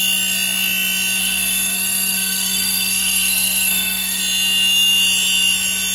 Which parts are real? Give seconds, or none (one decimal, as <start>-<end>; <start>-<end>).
0.0-1.2; 4.2-5.9